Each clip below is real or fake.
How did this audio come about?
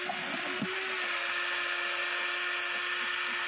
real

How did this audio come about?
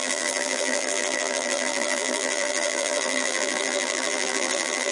fake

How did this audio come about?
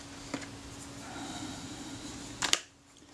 real